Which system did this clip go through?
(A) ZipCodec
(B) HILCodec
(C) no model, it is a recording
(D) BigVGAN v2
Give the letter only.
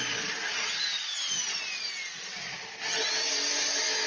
C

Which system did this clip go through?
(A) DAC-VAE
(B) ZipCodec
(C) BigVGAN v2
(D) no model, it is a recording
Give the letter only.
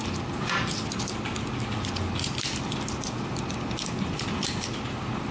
D